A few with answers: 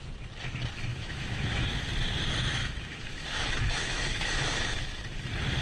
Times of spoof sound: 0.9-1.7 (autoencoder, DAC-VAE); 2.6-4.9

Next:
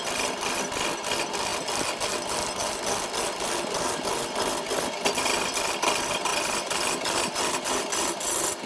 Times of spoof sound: none